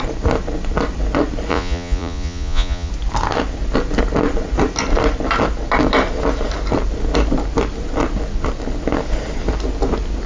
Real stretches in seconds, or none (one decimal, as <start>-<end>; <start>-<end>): 0.0-1.5; 2.9-10.3